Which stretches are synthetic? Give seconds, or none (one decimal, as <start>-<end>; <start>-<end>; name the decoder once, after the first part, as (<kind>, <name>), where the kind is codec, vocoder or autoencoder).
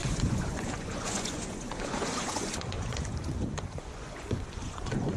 0.0-5.2 (vocoder, Vocos)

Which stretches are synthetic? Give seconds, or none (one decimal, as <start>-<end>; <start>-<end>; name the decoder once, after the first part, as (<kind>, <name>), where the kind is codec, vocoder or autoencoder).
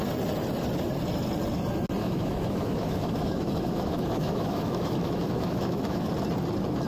2.0-6.1 (autoencoder, DAC-VAE)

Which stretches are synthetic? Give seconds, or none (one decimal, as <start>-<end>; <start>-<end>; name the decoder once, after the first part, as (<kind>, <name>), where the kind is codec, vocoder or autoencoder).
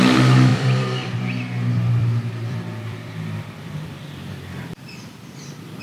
0.5-1.2 (vocoder, BigVGAN v2); 2.0-5.8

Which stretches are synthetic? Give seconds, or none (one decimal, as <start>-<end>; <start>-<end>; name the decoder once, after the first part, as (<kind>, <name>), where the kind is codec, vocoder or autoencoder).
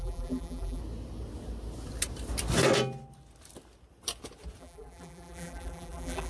0.0-0.8 (vocoder, BigVGAN v2); 4.6-6.3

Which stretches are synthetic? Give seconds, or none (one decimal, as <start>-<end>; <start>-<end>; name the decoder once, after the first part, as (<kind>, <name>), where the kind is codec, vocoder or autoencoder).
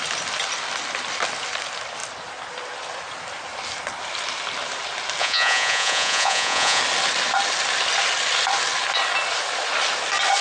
5.2-6.8 (vocoder, Vocos)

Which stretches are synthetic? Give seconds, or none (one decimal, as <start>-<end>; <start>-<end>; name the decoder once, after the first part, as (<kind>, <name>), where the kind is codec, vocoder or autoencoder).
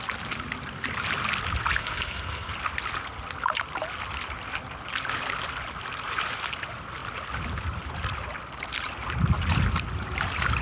1.8-2.5 (codec, SNAC)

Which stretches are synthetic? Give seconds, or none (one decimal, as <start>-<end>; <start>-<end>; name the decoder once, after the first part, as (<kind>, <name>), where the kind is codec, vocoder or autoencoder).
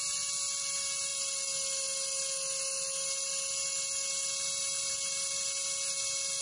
none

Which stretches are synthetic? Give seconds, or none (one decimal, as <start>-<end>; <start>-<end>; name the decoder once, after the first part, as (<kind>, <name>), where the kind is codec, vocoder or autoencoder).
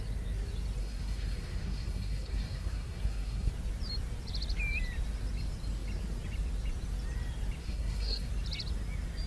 0.8-3.5 (codec, SNAC); 7.6-8.3